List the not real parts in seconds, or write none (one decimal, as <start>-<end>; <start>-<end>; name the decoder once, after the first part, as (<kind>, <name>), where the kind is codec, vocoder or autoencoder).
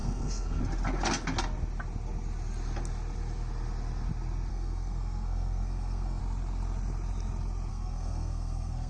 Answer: 0.0-0.6 (codec, SNAC); 4.5-6.2; 7.7-8.9